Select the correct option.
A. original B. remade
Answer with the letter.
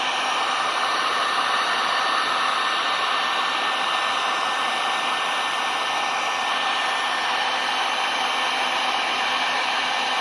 A